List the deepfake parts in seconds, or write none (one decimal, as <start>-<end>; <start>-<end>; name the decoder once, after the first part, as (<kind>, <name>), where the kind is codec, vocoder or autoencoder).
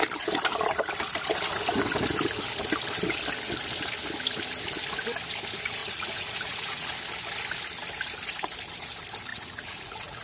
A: 5.8-6.9 (vocoder, Vocos); 9.3-10.2